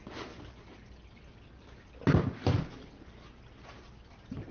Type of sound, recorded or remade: recorded